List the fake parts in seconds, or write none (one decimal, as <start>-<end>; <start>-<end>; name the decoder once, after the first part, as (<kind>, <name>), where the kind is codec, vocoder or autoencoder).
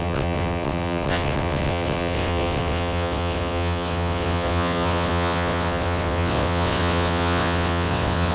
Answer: 0.0-8.3 (vocoder, WaveNeXt)